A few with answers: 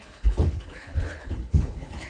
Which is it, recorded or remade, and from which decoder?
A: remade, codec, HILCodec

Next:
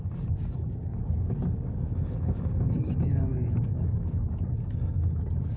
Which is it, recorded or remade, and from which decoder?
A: remade, codec, DAC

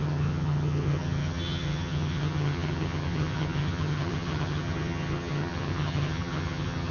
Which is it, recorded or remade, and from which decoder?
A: remade, vocoder, HiFi-GAN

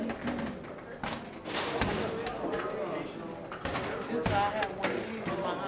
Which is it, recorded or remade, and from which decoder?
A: recorded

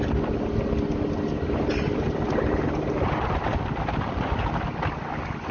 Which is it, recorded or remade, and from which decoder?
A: recorded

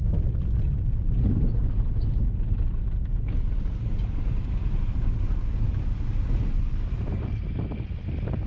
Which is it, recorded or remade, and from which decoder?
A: recorded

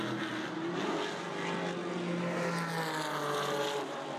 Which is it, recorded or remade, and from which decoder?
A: recorded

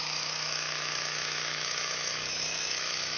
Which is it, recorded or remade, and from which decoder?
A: remade, autoencoder, DAC-VAE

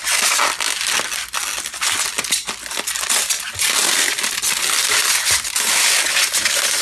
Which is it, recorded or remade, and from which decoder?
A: recorded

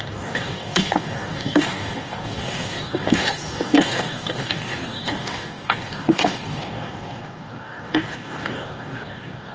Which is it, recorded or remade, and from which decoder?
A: remade, codec, DAC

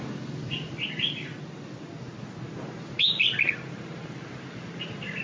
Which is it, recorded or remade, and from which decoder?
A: recorded